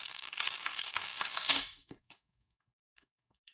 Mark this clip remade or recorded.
remade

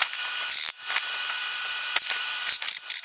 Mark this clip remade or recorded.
recorded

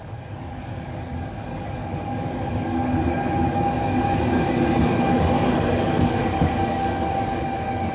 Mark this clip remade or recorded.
remade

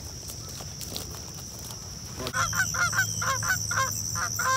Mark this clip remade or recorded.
recorded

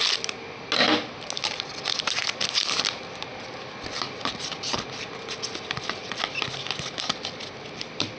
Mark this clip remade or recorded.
recorded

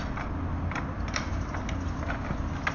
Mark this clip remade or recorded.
recorded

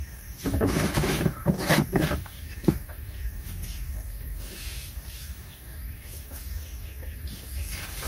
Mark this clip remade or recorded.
remade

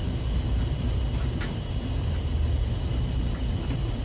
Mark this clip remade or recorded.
recorded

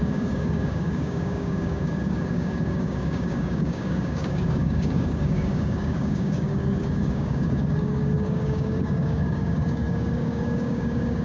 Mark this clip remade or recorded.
remade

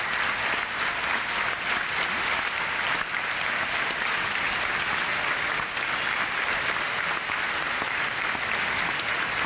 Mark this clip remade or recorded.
recorded